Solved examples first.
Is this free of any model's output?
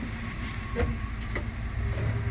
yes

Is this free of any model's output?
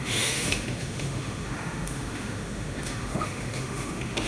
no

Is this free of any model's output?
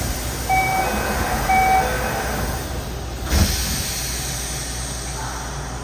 yes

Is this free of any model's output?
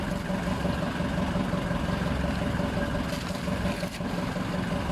yes